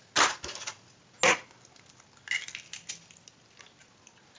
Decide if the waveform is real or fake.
real